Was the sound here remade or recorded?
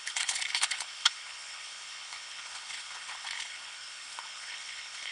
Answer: remade